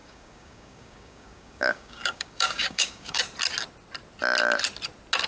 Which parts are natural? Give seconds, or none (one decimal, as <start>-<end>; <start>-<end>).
3.2-5.3